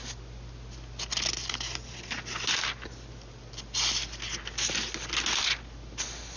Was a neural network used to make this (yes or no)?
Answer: no